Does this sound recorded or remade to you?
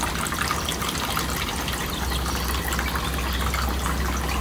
recorded